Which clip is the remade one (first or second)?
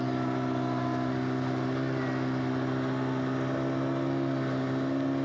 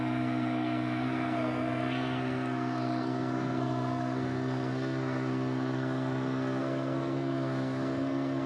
second